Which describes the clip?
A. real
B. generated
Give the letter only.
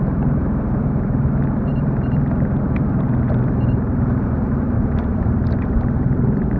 B